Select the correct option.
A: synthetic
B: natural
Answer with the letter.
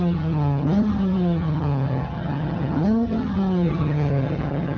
A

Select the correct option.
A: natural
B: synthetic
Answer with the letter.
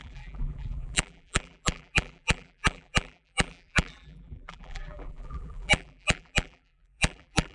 B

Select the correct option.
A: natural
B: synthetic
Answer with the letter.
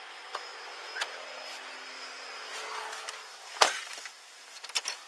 A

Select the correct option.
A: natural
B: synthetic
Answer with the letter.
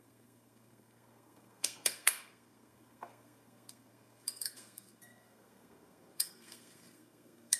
B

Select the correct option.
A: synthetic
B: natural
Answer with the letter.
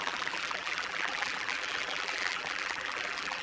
A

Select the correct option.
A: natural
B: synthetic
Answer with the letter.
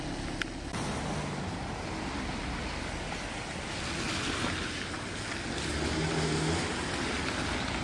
A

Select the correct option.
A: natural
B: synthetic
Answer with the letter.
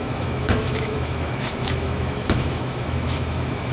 B